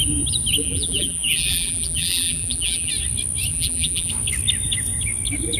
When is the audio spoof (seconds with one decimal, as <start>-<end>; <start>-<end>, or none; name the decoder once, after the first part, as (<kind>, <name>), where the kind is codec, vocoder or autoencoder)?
0.6-2.9 (vocoder, BigVGAN v2); 3.5-4.1